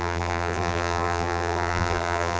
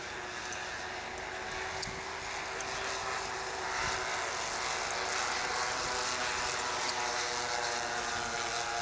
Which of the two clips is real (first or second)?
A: second